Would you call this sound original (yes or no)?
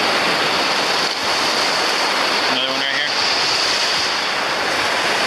yes